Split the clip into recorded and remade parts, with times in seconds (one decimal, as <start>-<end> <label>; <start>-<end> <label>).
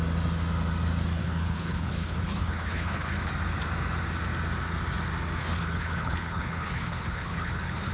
0.0-1.2 recorded; 1.2-3.3 remade; 3.3-5.4 recorded; 5.4-7.9 remade